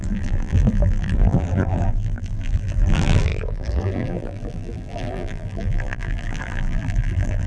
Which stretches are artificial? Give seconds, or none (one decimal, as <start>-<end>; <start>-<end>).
0.0-7.5